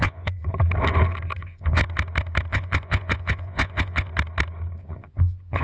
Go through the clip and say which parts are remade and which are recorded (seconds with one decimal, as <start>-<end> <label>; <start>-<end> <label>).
0.0-0.4 remade; 0.4-1.4 recorded; 1.4-1.8 remade; 1.8-2.5 recorded; 2.5-4.1 remade; 4.1-4.8 recorded; 4.8-5.6 remade